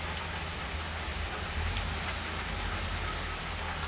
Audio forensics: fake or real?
real